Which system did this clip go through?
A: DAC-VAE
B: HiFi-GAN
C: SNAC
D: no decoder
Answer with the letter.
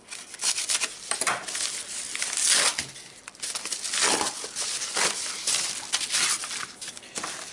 D